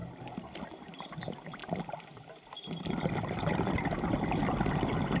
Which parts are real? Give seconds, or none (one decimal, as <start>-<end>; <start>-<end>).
0.0-5.2